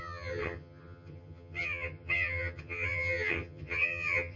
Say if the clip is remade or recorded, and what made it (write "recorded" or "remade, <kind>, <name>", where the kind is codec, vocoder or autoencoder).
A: remade, vocoder, HiFi-GAN